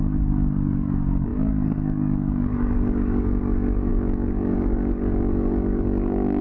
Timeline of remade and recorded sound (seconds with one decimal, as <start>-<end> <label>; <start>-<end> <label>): 0.0-6.4 remade